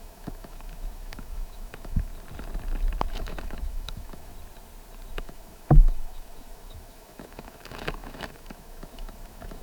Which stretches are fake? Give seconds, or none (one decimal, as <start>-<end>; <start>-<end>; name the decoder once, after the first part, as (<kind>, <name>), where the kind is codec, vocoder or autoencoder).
0.0-2.1 (autoencoder, DAC-VAE); 3.1-4.3; 5.1-9.6